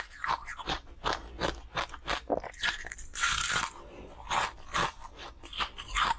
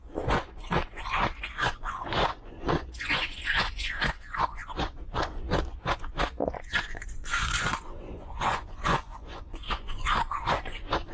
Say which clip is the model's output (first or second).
second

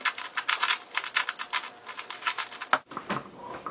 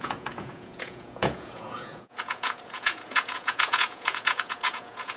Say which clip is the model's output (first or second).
second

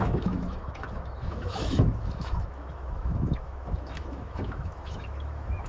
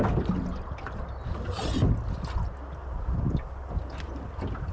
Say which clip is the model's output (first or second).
first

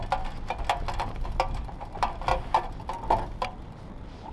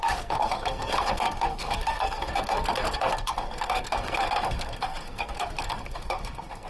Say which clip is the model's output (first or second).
second